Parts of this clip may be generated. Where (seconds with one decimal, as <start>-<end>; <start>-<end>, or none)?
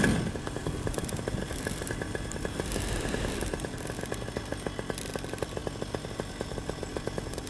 none